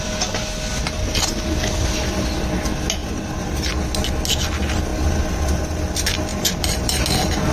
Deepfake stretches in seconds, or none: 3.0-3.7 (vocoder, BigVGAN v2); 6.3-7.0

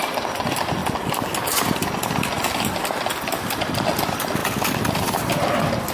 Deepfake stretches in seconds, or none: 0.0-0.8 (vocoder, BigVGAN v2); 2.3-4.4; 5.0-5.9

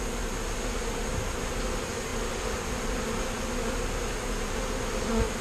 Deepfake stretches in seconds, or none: none

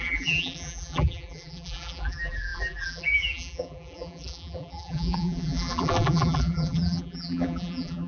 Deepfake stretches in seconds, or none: 0.0-8.1 (vocoder, BigVGAN v2)

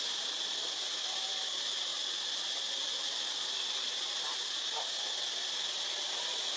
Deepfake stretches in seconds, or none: none

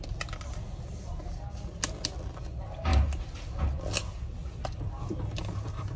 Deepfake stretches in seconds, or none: none

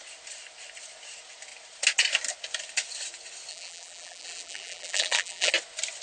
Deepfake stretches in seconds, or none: 3.5-5.5 (vocoder, BigVGAN v2)